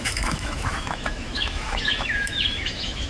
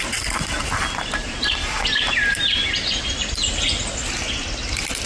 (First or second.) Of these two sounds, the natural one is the second